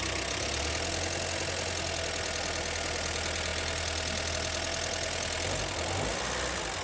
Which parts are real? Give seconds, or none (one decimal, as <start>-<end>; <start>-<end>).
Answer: 0.0-6.8